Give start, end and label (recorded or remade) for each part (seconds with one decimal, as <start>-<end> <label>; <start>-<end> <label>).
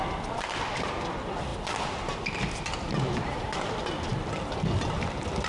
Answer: 0.0-5.5 recorded